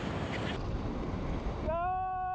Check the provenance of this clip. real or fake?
real